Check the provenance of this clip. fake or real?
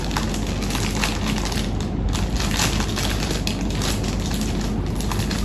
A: real